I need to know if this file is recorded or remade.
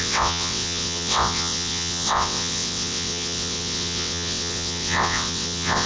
remade